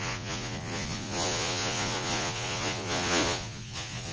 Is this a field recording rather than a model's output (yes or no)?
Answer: no